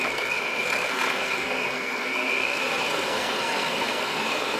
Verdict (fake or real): fake